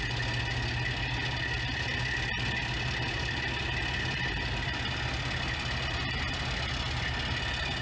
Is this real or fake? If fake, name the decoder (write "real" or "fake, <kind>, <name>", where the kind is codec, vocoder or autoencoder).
real